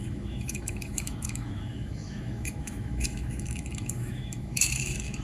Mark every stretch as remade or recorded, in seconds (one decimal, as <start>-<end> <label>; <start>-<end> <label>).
0.0-5.2 remade